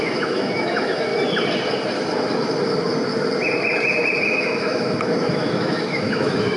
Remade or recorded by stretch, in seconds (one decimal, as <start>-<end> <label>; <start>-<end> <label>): 0.0-1.1 remade; 1.1-4.2 recorded; 4.2-6.6 remade